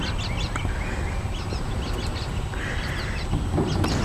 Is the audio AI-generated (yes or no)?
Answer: no